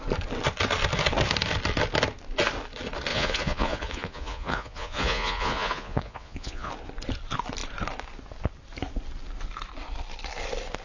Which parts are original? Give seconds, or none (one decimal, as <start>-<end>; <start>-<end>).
0.0-3.1; 6.7-10.8